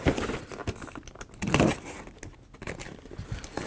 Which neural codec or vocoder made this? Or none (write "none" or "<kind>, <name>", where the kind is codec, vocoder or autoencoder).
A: none